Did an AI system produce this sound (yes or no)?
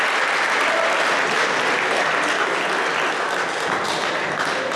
no